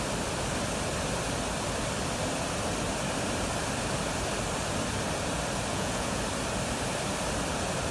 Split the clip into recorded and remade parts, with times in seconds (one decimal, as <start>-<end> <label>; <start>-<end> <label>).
0.0-5.7 recorded; 5.7-6.2 remade; 6.2-7.9 recorded